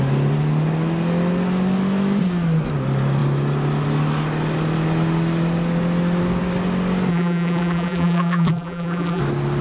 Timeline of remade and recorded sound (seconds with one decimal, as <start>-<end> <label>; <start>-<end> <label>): 0.0-7.1 recorded; 7.1-9.2 remade; 9.2-9.6 recorded